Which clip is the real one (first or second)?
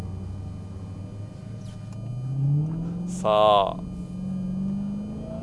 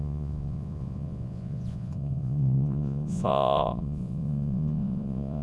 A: first